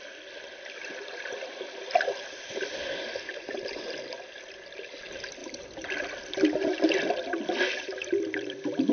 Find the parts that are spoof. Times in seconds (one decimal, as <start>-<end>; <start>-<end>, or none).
3.3-3.9; 5.4-6.0